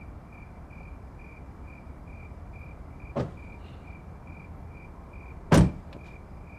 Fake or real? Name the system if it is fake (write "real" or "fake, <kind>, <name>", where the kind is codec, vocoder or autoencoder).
real